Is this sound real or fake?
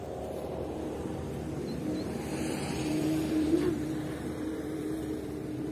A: fake